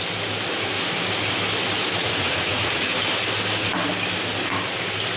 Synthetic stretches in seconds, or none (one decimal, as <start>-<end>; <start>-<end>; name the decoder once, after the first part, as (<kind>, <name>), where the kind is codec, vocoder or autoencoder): 2.0-2.8 (vocoder, Vocos)